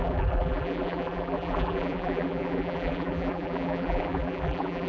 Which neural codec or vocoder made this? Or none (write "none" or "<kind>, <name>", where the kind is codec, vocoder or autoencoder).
vocoder, BigVGAN v2